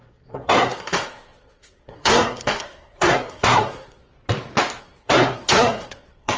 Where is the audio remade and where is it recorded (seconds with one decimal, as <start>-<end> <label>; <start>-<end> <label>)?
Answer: 0.0-4.1 remade; 4.1-4.8 recorded; 4.8-6.4 remade